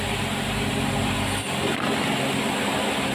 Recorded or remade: recorded